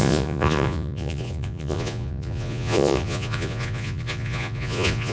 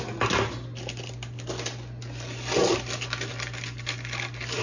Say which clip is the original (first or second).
second